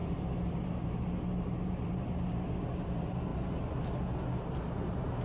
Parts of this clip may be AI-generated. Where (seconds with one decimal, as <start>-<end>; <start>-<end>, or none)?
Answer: none